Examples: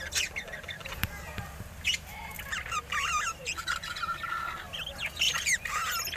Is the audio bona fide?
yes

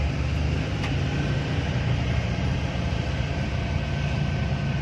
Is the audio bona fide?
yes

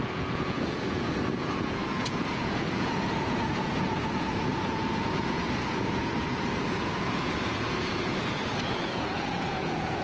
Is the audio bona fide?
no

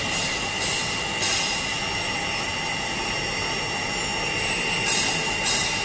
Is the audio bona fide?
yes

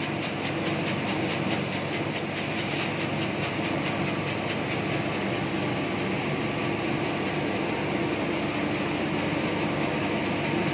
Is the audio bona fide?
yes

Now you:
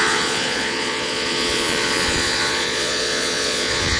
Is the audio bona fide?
no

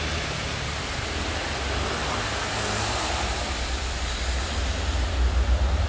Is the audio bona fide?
yes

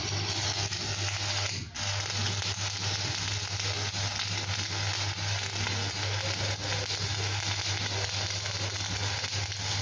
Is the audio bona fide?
yes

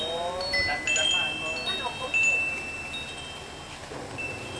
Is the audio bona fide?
yes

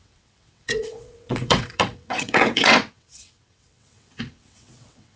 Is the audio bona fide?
no